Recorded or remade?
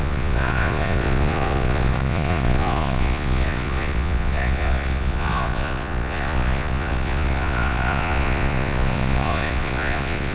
remade